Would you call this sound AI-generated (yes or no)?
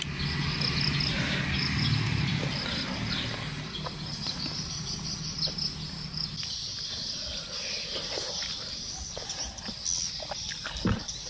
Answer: no